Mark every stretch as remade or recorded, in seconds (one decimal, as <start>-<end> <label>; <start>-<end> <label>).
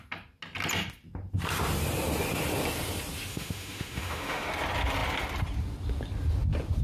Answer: 0.0-3.3 recorded; 3.3-4.5 remade; 4.5-6.8 recorded